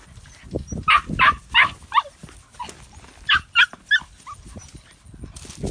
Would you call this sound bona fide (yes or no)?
yes